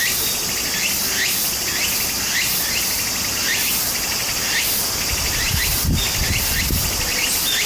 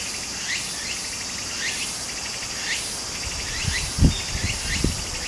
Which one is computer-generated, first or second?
first